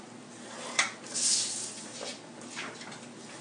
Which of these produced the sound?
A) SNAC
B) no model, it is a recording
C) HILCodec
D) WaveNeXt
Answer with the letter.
B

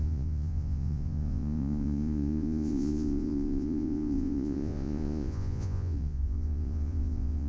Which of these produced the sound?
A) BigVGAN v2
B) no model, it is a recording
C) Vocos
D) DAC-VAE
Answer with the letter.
C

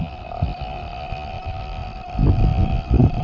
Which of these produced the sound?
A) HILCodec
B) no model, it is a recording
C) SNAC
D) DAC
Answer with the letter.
B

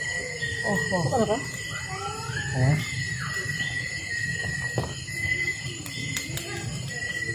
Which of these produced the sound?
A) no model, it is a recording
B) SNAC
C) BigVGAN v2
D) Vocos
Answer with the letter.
A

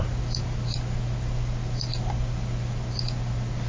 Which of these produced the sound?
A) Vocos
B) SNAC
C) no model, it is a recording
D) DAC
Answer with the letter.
C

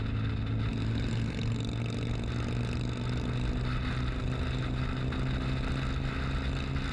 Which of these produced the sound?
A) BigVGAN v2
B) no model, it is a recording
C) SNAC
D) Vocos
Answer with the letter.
B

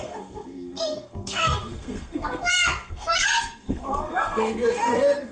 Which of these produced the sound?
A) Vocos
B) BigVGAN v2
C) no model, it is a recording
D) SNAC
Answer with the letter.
D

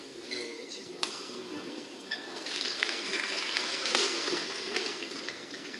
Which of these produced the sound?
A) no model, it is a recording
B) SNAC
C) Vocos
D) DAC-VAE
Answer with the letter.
B